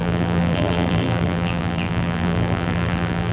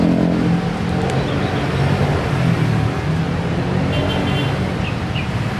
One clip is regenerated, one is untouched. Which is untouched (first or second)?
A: second